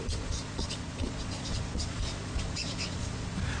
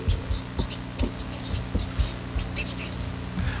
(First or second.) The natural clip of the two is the second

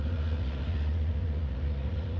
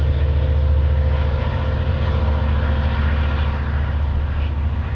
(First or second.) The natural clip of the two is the second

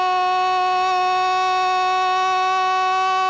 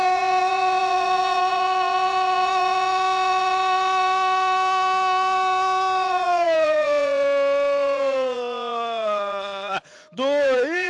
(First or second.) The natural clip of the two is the first